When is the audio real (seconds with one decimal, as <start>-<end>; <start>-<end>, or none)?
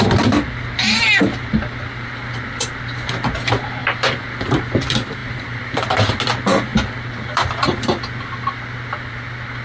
0.0-3.8; 4.6-5.2; 6.2-9.6